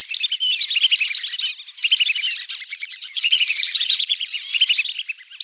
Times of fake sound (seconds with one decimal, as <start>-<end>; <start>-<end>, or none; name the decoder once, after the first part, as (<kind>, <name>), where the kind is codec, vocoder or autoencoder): 2.7-4.6 (vocoder, Vocos)